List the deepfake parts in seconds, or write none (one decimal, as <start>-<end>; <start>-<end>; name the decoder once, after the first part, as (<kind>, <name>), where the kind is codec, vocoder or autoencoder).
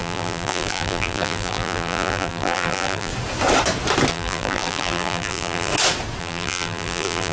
0.0-3.1 (vocoder, BigVGAN v2); 4.1-5.7; 6.2-7.3